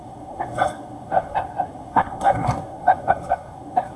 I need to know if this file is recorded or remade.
remade